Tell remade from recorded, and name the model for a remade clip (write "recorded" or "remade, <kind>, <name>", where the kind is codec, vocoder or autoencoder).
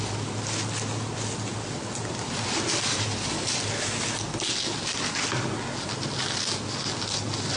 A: recorded